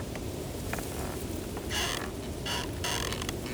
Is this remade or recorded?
recorded